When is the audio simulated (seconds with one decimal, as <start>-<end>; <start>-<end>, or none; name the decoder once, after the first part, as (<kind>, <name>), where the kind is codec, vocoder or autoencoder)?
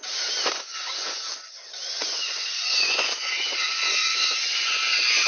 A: 0.0-1.3 (vocoder, Vocos); 1.9-5.3